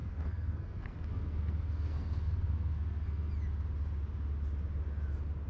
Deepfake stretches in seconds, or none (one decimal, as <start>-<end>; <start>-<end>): 0.0-3.3